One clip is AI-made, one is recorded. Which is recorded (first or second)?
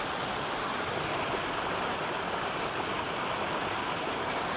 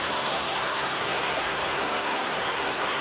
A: first